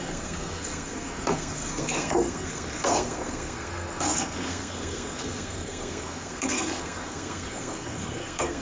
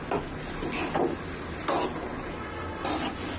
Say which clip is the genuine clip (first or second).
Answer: second